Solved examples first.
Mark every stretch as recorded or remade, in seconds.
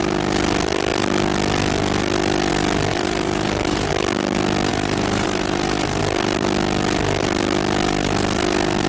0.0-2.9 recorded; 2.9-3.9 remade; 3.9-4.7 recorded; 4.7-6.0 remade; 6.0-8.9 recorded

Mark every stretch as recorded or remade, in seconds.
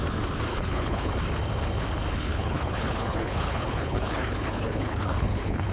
0.0-0.5 recorded; 0.5-1.1 remade; 1.1-2.2 recorded; 2.2-5.7 remade